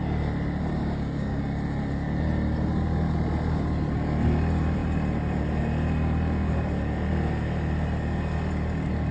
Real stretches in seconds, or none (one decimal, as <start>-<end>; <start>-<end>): 0.0-0.8; 1.4-9.1